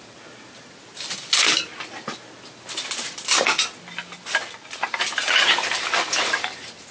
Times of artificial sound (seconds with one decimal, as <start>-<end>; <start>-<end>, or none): none